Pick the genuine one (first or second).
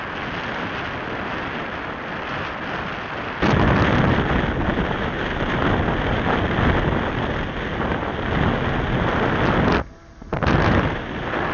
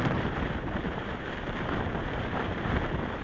first